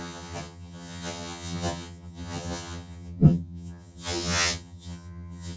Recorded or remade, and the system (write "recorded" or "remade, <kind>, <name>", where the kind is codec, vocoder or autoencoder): remade, vocoder, HiFi-GAN